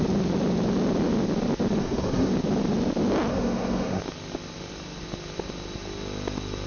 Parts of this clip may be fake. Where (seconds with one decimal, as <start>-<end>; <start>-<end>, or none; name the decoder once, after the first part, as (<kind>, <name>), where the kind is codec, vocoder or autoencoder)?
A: 1.8-2.3 (codec, SNAC); 3.3-4.0